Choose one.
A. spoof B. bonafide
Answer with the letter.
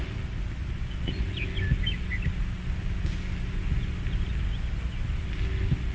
B